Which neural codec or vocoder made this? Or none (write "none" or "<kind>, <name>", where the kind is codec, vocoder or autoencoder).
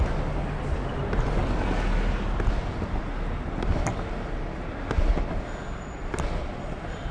none